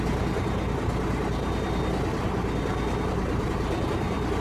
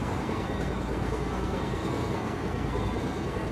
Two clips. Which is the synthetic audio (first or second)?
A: second